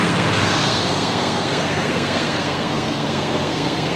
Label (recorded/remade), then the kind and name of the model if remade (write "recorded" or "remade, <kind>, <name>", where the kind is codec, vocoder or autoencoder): remade, codec, SNAC